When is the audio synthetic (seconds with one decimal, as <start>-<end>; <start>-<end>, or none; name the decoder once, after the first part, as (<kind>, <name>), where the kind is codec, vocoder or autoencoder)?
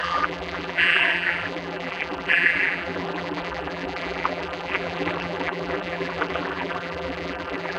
0.0-7.8 (vocoder, BigVGAN v2)